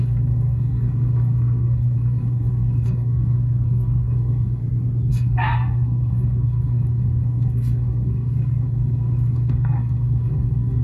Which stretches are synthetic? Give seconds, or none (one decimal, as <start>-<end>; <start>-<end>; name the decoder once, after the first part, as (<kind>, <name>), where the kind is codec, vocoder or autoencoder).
0.0-4.6 (codec, SNAC); 5.1-10.8